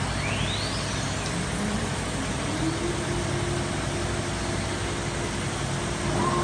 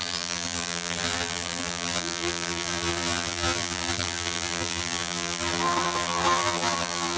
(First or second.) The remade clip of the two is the second